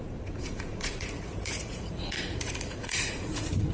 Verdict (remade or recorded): remade